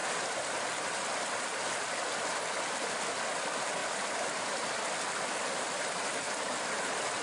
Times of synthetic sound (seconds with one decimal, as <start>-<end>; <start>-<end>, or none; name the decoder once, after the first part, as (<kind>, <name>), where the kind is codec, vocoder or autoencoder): 0.0-3.4 (vocoder, BigVGAN v2); 3.8-5.4